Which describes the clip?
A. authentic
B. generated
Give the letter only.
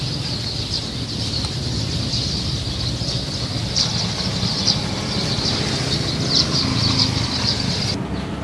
A